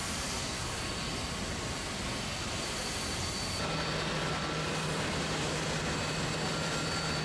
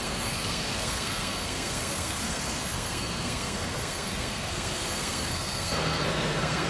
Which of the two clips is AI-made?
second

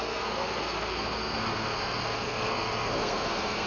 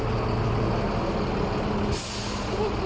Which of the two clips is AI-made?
first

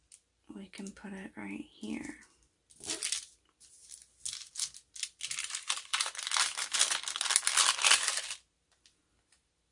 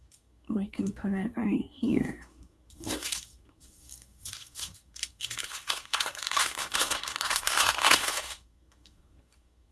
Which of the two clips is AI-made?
second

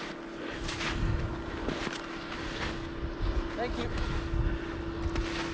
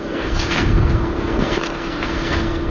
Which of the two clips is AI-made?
second